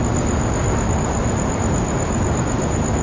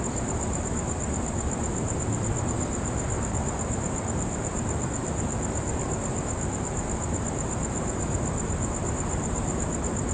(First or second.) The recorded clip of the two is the first